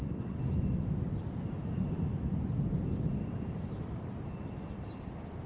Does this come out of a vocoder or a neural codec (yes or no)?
no